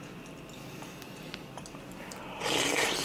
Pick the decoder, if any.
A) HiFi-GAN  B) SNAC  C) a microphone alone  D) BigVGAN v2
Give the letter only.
C